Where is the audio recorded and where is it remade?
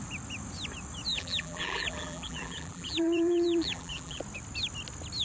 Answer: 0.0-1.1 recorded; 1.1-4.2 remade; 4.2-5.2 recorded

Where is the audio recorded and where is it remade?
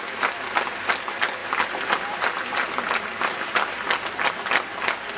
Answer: 0.0-1.4 recorded; 1.4-4.3 remade; 4.3-5.2 recorded